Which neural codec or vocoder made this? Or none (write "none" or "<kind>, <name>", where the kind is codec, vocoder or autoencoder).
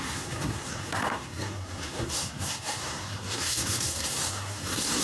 codec, SNAC